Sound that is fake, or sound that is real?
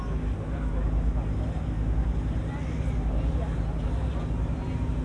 real